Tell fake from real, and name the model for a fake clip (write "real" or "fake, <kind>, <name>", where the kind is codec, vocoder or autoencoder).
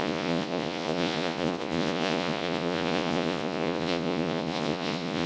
fake, vocoder, Vocos